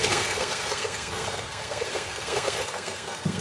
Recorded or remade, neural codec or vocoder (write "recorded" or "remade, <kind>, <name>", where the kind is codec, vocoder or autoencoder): remade, codec, SNAC